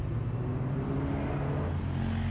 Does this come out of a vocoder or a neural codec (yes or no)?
no